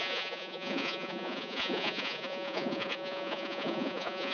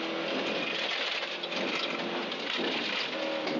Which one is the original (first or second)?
second